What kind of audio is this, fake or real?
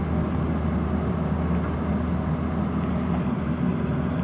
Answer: real